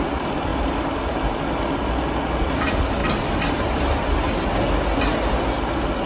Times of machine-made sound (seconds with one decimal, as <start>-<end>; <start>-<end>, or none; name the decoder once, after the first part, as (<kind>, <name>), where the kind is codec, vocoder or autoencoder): 0.5-1.1 (vocoder, BigVGAN v2); 3.0-3.9